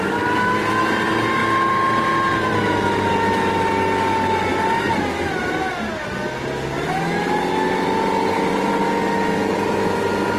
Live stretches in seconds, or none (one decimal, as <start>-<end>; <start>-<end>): 0.0-1.4; 4.5-10.4